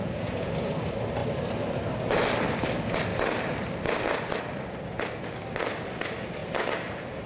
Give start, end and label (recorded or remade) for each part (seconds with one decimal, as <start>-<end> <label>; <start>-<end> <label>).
0.0-0.5 remade; 0.5-7.3 recorded

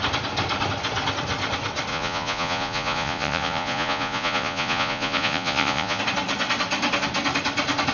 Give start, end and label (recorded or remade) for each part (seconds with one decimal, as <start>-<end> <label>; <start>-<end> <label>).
0.0-1.9 recorded; 1.9-6.0 remade; 6.0-7.9 recorded

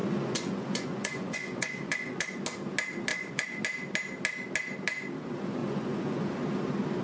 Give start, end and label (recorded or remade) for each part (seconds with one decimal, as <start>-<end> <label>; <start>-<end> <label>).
0.0-2.3 remade; 2.3-3.1 recorded; 3.1-3.6 remade; 3.6-5.6 recorded; 5.6-6.3 remade; 6.3-7.0 recorded